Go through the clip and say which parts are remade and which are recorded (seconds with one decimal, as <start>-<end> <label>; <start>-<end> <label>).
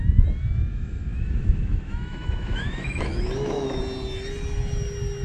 0.0-0.7 recorded; 0.7-3.8 remade; 3.8-5.2 recorded